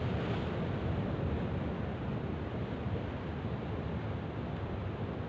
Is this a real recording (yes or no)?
yes